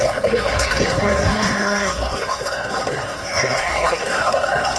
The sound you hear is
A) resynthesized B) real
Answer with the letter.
A